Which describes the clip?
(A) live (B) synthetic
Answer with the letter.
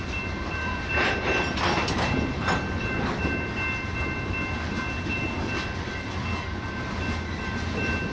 A